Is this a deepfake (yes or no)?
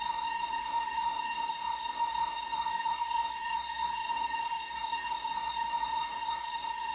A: yes